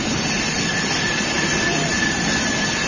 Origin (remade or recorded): recorded